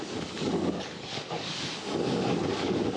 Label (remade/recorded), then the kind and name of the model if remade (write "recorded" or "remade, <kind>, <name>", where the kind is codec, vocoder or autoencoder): remade, codec, DAC